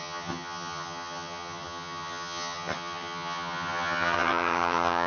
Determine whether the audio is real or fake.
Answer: fake